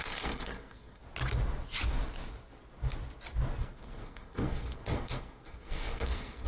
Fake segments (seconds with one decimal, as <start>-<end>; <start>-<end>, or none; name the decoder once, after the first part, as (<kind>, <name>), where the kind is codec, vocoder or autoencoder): 0.0-1.0 (codec, SNAC); 3.6-6.5